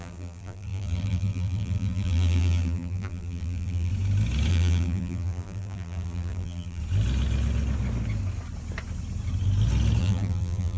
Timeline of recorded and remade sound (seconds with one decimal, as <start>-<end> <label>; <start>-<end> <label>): 0.0-3.9 remade; 3.9-4.5 recorded; 4.5-6.8 remade; 6.8-10.0 recorded; 10.0-10.8 remade